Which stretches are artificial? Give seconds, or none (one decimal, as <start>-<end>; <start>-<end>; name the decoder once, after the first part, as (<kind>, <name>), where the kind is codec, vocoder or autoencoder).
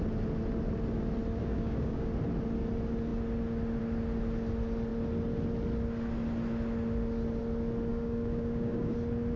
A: 1.4-2.1 (codec, DAC); 7.9-8.9